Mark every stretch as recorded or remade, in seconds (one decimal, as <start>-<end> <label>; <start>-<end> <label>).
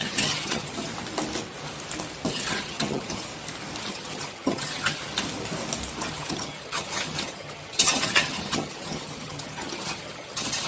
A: 0.0-0.9 remade; 0.9-2.3 recorded; 2.3-3.3 remade; 3.3-3.9 recorded; 3.9-5.0 remade; 5.0-6.1 recorded; 6.1-10.7 remade